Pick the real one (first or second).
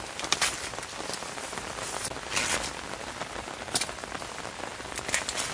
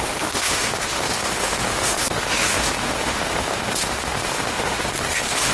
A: first